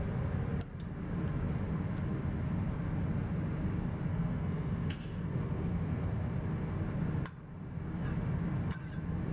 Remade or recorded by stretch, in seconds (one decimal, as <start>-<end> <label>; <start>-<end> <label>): 0.0-4.1 recorded; 4.1-6.1 remade; 6.1-9.3 recorded